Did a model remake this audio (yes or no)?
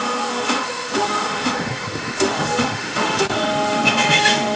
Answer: yes